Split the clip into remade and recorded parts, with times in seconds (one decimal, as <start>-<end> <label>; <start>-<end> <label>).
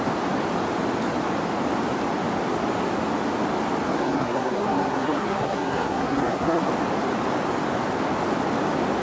0.0-3.9 recorded; 3.9-6.7 remade; 6.7-9.0 recorded